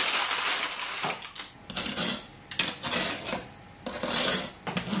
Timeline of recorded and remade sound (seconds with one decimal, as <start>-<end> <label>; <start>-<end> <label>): 0.0-0.7 remade; 0.7-2.3 recorded; 2.3-4.5 remade; 4.5-5.0 recorded